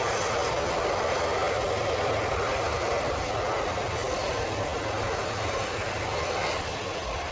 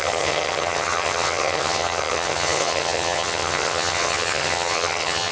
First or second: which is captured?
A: first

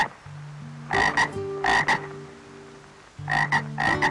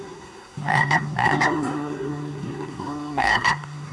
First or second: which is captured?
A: first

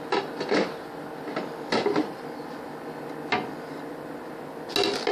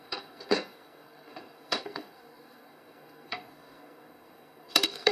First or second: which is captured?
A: first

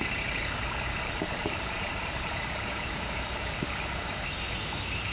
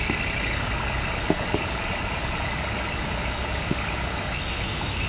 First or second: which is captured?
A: second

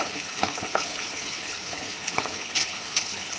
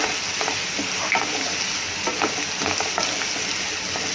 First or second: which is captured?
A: second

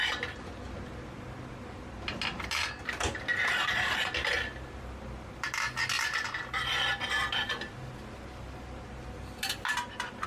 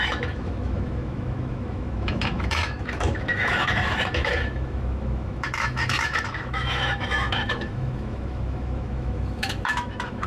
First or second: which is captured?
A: first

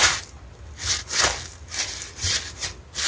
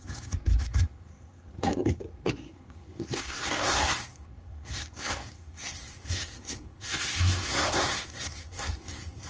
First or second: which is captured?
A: first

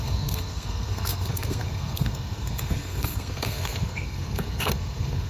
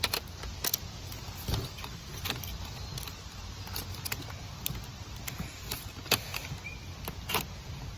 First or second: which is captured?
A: second